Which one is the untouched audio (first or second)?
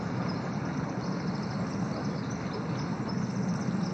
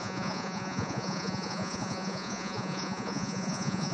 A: first